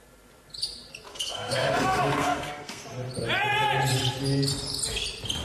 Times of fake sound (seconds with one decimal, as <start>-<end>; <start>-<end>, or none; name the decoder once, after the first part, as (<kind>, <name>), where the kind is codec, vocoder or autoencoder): 1.1-2.8 (codec, SNAC)